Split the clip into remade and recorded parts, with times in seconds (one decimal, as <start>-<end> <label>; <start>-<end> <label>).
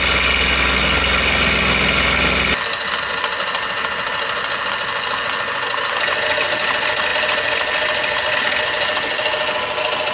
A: 0.0-10.1 recorded